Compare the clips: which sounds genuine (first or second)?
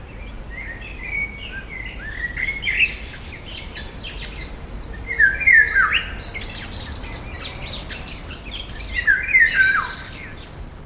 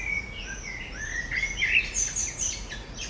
first